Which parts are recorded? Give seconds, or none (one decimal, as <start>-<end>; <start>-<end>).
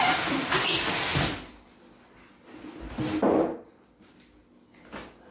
0.0-5.3